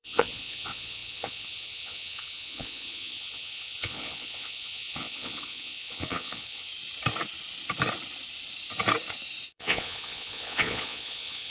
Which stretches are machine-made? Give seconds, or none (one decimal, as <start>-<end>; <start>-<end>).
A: 0.0-6.7; 9.5-11.5